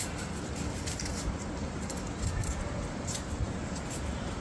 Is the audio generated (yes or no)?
no